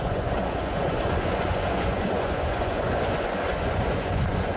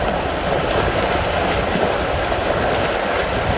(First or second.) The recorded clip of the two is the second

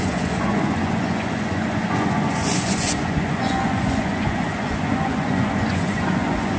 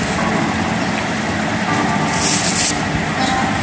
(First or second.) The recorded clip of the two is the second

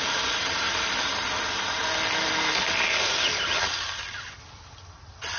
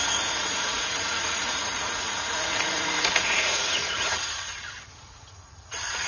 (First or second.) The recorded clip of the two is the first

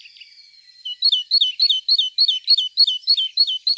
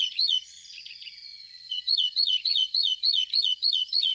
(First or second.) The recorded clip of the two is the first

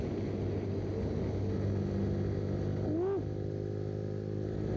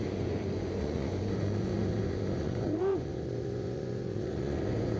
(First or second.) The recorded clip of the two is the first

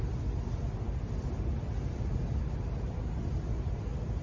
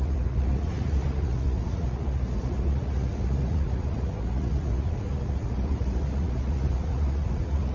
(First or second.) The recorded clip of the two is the first